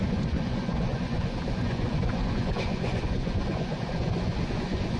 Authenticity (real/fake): fake